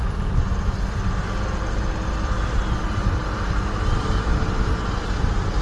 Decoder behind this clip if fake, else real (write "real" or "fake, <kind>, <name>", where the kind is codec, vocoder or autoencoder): real